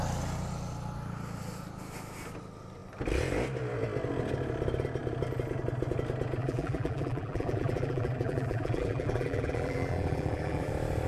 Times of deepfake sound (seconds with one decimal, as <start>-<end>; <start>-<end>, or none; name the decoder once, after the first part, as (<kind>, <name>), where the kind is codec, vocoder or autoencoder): 6.4-10.7 (vocoder, BigVGAN v2)